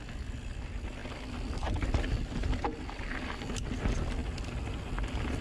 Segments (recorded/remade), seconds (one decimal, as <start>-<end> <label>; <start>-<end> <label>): 0.0-5.4 recorded